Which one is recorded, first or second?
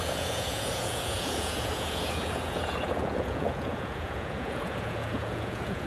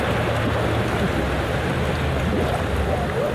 second